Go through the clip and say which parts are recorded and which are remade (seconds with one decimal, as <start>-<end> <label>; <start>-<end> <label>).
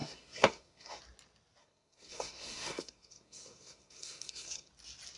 0.0-1.0 remade; 1.0-1.6 recorded; 1.6-4.7 remade; 4.7-5.2 recorded